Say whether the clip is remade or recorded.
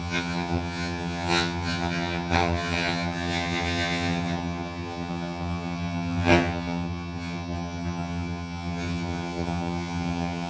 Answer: remade